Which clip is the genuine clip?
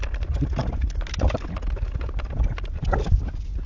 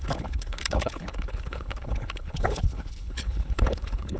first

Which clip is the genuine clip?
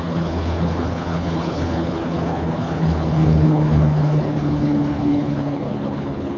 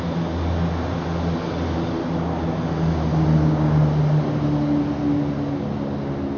second